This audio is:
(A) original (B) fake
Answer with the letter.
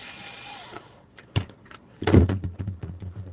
B